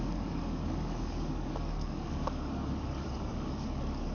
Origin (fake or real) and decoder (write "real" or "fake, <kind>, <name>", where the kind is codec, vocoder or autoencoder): fake, codec, DAC